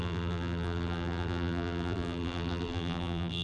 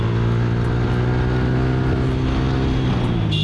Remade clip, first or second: first